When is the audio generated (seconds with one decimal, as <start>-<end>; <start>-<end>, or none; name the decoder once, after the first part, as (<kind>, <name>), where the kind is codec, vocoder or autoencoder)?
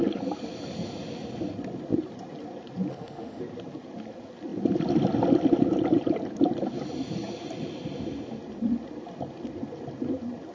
2.9-3.4 (autoencoder, DAC-VAE)